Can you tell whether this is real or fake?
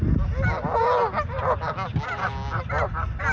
real